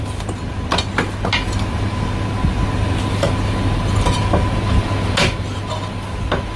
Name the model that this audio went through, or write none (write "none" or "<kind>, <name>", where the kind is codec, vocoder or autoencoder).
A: none